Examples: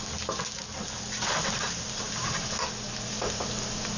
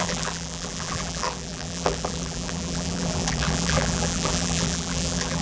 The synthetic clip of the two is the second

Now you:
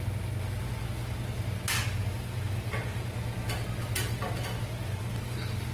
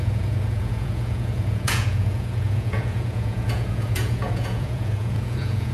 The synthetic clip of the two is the second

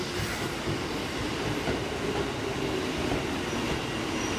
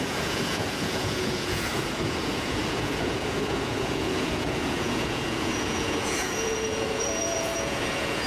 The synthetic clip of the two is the second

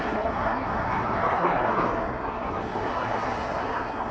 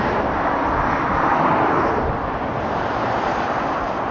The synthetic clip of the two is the first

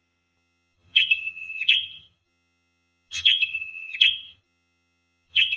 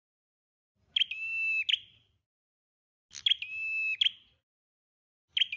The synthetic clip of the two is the first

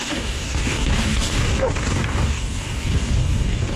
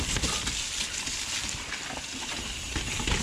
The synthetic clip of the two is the first